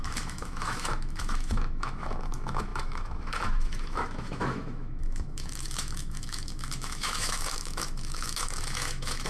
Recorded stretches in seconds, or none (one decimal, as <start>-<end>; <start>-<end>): none